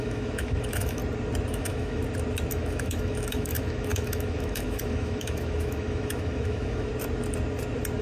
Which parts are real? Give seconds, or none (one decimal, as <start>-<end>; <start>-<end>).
1.0-1.5; 2.0-2.5; 6.9-8.0